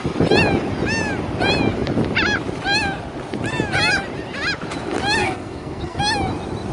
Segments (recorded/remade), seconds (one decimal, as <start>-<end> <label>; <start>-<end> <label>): 0.0-5.2 recorded; 5.2-6.0 remade; 6.0-6.7 recorded